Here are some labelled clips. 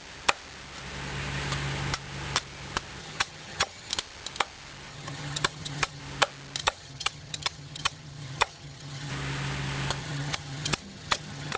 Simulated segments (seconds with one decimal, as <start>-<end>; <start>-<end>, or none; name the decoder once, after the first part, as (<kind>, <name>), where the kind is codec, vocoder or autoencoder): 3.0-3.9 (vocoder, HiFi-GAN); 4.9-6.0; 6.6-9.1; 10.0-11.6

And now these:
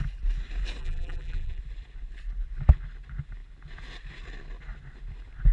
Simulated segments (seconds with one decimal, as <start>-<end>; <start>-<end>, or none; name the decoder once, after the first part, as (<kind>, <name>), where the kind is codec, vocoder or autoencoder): 0.8-1.6 (vocoder, BigVGAN v2)

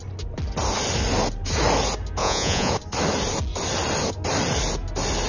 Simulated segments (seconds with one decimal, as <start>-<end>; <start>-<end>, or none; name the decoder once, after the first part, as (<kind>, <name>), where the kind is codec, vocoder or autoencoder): 2.2-2.7 (vocoder, Vocos)

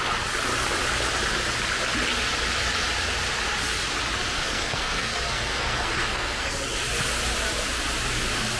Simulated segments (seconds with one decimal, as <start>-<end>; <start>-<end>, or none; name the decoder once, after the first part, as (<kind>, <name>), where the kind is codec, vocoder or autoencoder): 4.3-6.5 (codec, SNAC)

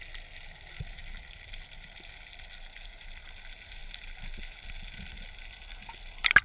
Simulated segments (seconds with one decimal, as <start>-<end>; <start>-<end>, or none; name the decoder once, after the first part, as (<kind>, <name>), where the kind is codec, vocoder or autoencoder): none

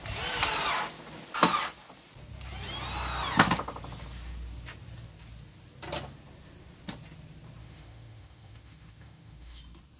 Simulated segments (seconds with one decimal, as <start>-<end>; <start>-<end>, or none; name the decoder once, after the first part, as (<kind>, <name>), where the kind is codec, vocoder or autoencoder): 7.6-9.6 (autoencoder, DAC-VAE)

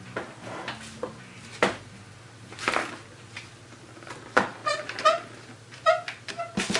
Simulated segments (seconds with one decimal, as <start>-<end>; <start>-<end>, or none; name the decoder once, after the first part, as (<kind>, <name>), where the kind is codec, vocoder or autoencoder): none

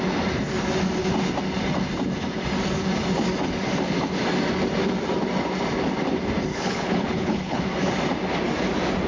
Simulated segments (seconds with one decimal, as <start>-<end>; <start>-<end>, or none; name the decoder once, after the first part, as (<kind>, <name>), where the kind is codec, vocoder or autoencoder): 6.5-7.6 (codec, HILCodec)